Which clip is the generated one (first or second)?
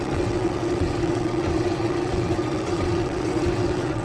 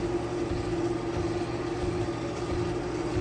first